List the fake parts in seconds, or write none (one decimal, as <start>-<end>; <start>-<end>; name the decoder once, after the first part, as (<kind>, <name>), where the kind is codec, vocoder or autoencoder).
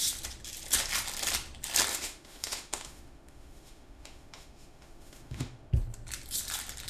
1.9-5.7 (autoencoder, DAC-VAE)